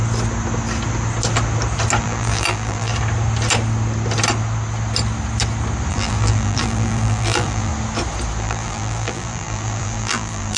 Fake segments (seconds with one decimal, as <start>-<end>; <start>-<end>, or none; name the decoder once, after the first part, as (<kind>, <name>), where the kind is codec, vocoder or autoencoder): 2.0-2.9 (vocoder, BigVGAN v2); 5.9-7.7; 8.4-10.6